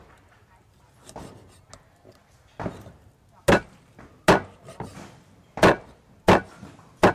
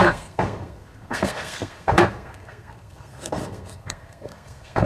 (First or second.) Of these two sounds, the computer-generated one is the second